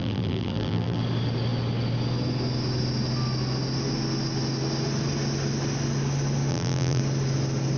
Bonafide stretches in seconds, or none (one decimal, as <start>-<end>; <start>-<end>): 1.0-6.5; 7.0-7.8